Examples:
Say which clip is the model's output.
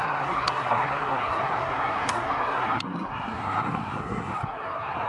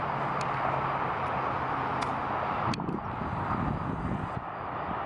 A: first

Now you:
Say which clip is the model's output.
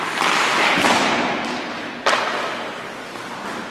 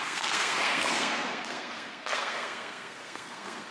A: second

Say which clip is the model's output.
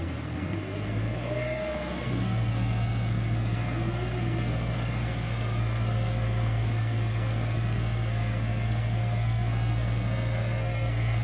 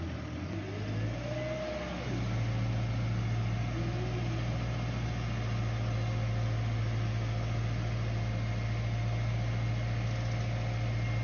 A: first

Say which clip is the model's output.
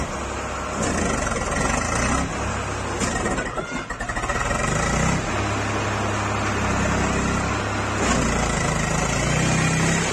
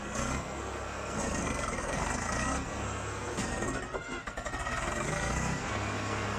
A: second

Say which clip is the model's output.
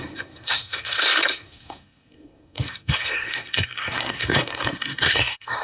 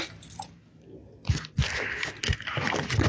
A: first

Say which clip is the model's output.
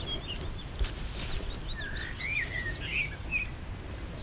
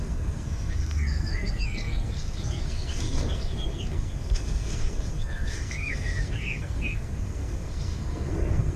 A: second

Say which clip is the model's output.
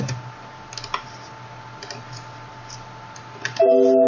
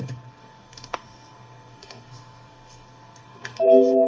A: second